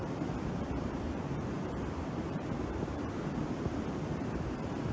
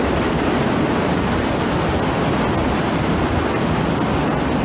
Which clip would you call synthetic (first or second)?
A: first